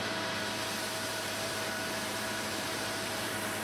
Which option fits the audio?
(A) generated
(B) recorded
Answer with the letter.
A